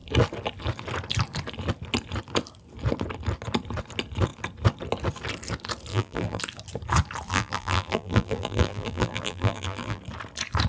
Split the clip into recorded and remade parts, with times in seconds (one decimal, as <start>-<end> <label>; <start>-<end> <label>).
0.0-5.9 recorded; 5.9-6.4 remade; 6.4-7.3 recorded; 7.3-10.0 remade; 10.0-10.7 recorded